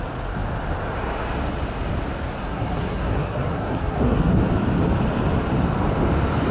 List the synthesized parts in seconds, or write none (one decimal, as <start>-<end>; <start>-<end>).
2.4-4.3